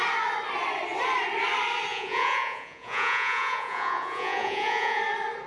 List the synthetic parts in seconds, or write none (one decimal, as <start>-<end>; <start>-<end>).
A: 1.9-5.0